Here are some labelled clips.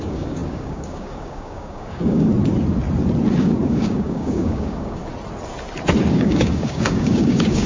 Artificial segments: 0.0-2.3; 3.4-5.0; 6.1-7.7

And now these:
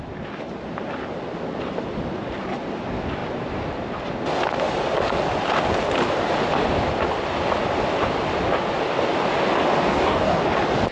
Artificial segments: 9.9-10.4

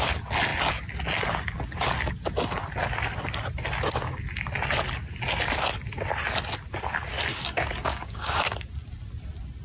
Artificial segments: 7.3-8.4